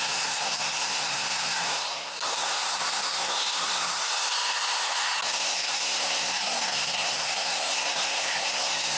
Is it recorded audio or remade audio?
remade